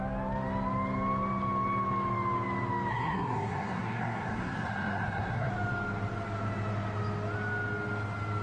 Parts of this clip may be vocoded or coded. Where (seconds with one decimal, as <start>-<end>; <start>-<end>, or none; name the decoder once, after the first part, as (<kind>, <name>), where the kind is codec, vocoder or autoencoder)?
2.9-5.5 (codec, SNAC)